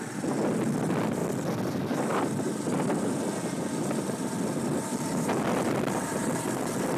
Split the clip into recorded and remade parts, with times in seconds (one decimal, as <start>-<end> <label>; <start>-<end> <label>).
0.0-7.0 recorded